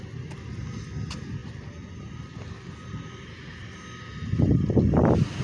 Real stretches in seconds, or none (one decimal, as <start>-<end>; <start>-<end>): 0.0-5.4